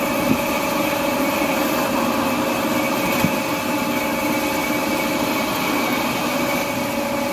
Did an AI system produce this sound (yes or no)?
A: no